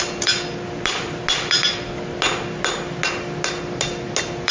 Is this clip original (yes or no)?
yes